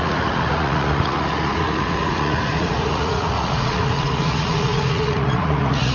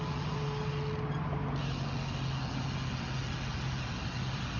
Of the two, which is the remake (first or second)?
first